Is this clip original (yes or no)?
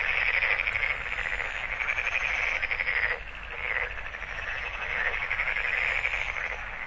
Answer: yes